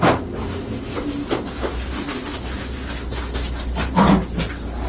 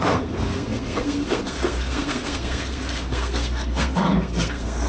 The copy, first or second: second